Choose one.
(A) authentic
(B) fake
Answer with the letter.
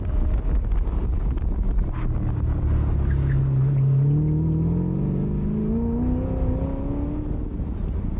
A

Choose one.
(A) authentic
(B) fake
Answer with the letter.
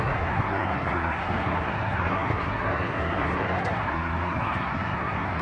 B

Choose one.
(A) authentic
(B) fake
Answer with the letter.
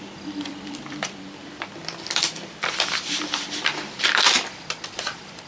B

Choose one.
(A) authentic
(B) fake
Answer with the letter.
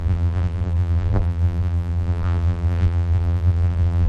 B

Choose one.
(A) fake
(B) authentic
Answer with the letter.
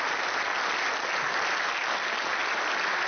B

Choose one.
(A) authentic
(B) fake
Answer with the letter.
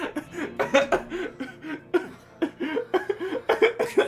B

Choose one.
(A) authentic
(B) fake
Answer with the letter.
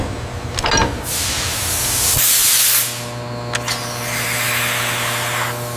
A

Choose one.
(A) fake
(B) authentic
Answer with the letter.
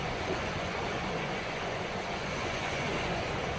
A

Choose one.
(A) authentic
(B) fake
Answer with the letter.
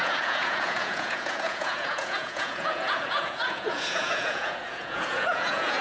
B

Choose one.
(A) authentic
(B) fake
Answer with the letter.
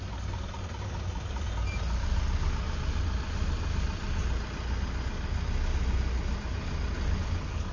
A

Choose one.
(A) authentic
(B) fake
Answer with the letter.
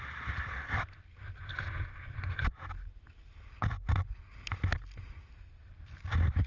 A